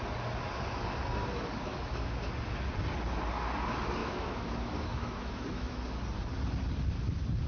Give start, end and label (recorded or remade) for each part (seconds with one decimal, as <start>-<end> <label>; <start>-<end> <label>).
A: 0.0-1.7 recorded; 1.7-2.3 remade; 2.3-4.0 recorded; 4.0-5.8 remade; 5.8-7.5 recorded